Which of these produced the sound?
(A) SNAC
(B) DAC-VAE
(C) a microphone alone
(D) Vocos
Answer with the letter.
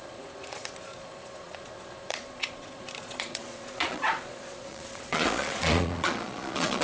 D